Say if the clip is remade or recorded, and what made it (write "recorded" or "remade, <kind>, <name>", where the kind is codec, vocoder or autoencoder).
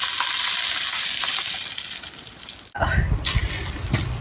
remade, vocoder, BigVGAN v2